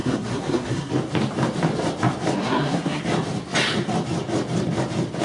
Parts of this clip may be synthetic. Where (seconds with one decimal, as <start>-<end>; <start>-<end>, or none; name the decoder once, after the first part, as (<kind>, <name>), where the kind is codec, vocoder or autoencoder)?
0.0-0.9 (codec, SNAC); 2.4-3.0